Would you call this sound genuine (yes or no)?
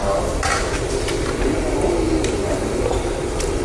yes